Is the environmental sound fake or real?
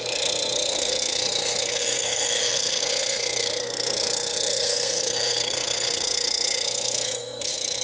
fake